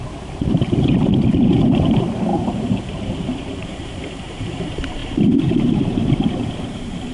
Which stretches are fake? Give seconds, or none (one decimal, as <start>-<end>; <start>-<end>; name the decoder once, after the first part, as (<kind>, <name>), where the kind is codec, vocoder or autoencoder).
0.0-7.1 (vocoder, BigVGAN v2)